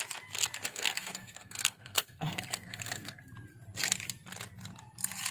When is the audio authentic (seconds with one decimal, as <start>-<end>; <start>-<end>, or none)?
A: 0.0-0.7; 3.2-5.3